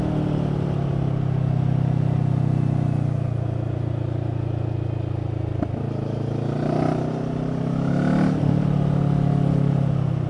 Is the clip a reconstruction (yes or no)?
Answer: no